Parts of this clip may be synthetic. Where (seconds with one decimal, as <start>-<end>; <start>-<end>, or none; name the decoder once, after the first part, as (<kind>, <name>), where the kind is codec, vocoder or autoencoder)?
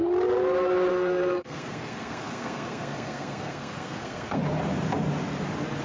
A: 0.9-4.4 (codec, SNAC)